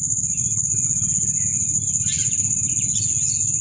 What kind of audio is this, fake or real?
real